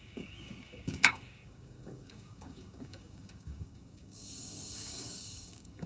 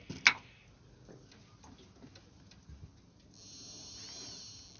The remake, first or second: first